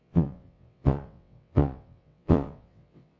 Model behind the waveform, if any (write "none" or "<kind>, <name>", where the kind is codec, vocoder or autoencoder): vocoder, WaveNeXt